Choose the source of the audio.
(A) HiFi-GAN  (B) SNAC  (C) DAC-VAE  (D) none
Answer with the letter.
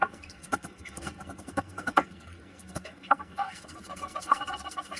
B